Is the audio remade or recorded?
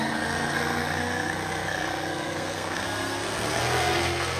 remade